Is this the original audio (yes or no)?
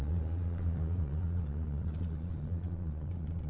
no